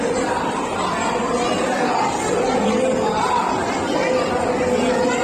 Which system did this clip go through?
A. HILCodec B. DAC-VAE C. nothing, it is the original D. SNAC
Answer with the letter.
C